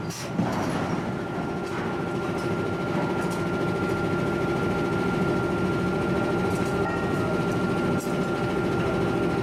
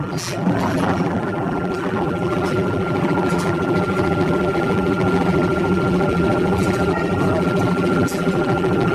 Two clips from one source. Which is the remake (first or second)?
second